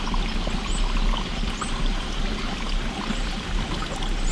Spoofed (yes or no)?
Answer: no